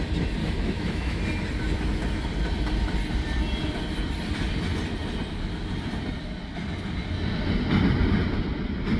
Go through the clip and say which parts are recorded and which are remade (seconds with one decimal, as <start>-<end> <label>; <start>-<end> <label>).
0.0-0.4 recorded; 0.4-1.2 remade; 1.2-9.0 recorded